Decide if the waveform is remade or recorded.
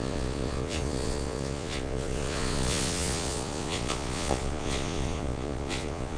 remade